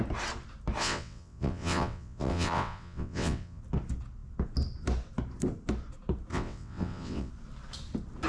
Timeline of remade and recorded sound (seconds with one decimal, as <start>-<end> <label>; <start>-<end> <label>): 0.0-0.8 recorded; 0.8-3.6 remade; 3.6-6.3 recorded; 6.3-7.3 remade; 7.3-8.3 recorded